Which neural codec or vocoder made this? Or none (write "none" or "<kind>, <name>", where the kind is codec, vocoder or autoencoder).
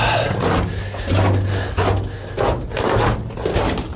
none